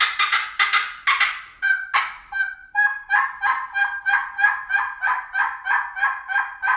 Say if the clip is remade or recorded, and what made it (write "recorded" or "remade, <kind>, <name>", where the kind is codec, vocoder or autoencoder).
recorded